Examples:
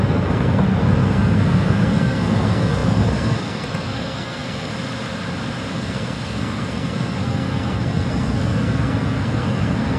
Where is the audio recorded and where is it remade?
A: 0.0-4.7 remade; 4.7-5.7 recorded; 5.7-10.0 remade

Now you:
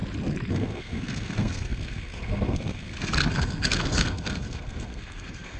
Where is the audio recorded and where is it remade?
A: 0.0-0.5 recorded; 0.5-5.6 remade

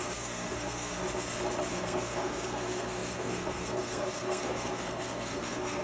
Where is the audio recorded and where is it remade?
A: 0.0-1.0 remade; 1.0-1.7 recorded; 1.7-5.8 remade

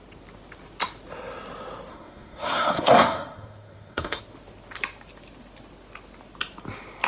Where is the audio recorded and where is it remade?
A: 0.0-1.9 recorded; 1.9-4.2 remade; 4.2-7.1 recorded

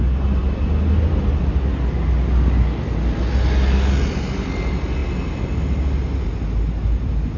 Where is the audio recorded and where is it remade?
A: 0.0-7.4 recorded

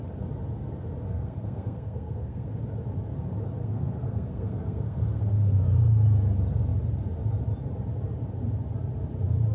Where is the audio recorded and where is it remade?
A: 0.0-1.0 recorded; 1.0-2.6 remade; 2.6-3.6 recorded; 3.6-5.8 remade; 5.8-9.5 recorded

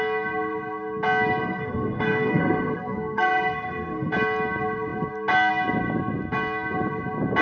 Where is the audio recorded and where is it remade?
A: 0.0-1.4 recorded; 1.4-4.1 remade; 4.1-7.4 recorded

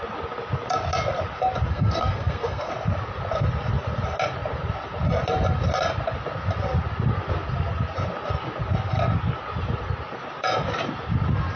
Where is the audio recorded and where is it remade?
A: 0.0-1.7 recorded; 1.7-2.7 remade; 2.7-11.6 recorded